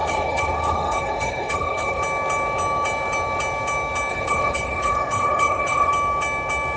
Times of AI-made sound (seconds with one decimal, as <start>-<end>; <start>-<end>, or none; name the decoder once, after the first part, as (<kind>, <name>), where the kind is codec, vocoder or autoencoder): 0.0-2.0 (codec, HILCodec); 4.1-5.9